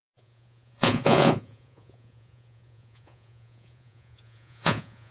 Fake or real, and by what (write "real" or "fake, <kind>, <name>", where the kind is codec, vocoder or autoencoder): fake, vocoder, Vocos